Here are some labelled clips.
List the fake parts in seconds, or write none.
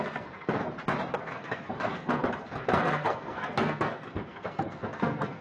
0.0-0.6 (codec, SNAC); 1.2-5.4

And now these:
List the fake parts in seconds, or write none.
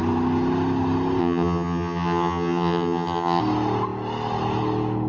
1.2-3.4 (vocoder, HiFi-GAN)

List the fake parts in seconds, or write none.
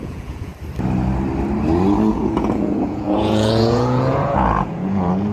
0.0-0.5 (vocoder, Vocos); 2.1-5.3